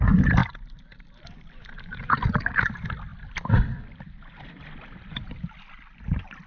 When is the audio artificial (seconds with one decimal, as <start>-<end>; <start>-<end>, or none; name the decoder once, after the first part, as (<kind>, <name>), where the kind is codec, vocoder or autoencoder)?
none

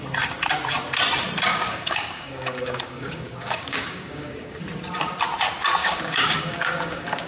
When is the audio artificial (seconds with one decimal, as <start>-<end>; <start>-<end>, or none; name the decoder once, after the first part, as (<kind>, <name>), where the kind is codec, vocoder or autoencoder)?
1.5-4.6 (codec, DAC); 5.8-7.3